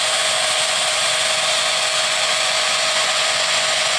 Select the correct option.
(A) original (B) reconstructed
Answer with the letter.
B